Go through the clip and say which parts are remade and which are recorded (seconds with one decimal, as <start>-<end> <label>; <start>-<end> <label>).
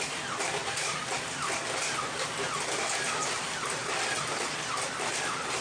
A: 0.0-5.6 recorded